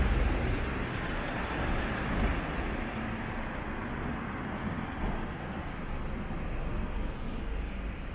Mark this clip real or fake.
real